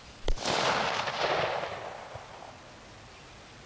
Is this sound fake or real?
real